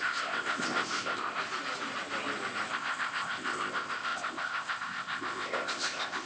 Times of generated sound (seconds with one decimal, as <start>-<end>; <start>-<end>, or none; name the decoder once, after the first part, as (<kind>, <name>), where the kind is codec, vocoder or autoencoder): 0.0-1.4 (codec, ZipCodec); 2.7-6.3